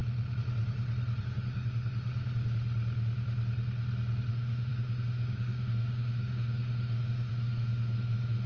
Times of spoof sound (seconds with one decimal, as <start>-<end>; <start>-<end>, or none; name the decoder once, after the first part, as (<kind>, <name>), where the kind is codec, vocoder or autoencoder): 1.2-2.1 (autoencoder, DAC-VAE); 4.3-8.5